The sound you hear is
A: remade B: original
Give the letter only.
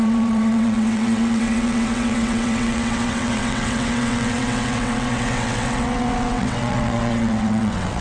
A